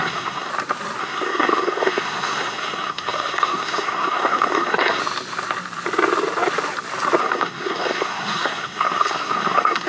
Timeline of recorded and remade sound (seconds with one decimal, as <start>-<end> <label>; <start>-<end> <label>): 0.0-0.5 remade; 0.5-1.0 recorded; 1.0-5.0 remade; 5.0-7.2 recorded; 7.2-9.9 remade